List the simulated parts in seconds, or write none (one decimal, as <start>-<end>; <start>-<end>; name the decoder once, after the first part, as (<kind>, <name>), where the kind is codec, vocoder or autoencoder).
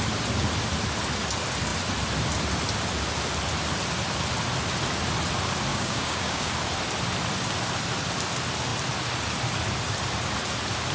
5.7-6.5 (codec, DAC)